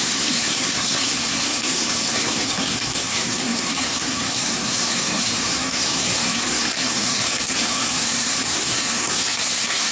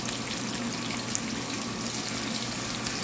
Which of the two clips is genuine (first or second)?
second